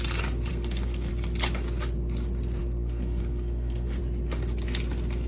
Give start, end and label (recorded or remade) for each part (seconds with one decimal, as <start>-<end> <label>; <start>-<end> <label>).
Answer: 0.0-0.5 recorded; 0.5-1.1 remade; 1.1-2.6 recorded; 2.6-4.0 remade; 4.0-5.3 recorded